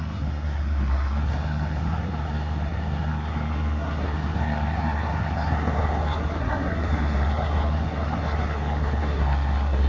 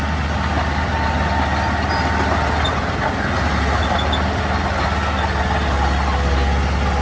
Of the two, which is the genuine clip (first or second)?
second